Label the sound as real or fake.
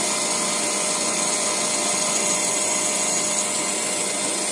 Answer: fake